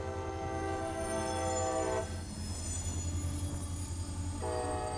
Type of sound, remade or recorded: recorded